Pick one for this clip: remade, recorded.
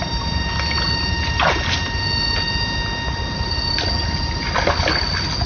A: recorded